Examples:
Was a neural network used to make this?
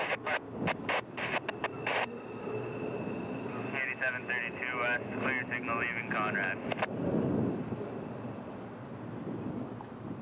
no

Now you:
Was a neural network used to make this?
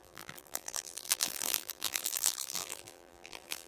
yes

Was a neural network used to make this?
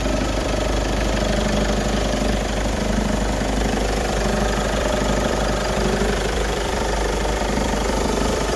yes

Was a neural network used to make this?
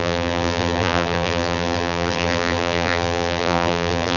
yes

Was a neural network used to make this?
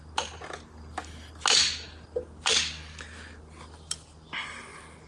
no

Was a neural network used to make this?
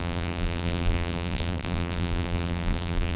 yes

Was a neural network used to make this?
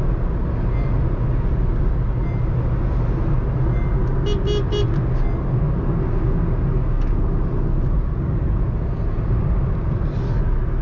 no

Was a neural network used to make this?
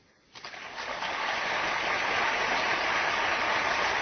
no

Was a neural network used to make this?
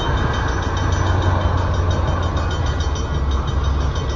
no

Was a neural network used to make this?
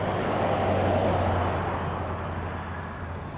no